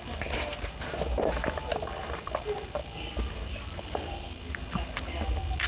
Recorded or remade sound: recorded